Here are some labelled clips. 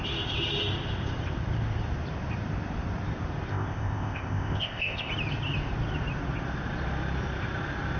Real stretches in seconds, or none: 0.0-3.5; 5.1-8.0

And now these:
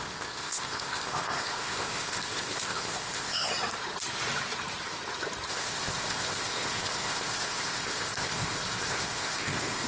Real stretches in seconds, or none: 3.5-5.5

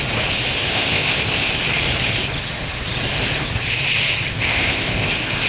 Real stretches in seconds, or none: 0.0-0.7; 1.5-4.3; 5.1-5.5

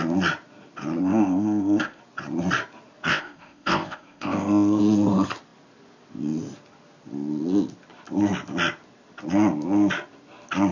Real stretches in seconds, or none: 0.0-1.0; 2.0-3.1; 4.8-10.7

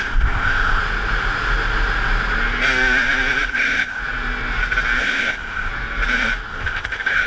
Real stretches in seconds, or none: 0.8-3.5; 4.0-5.0; 5.7-6.5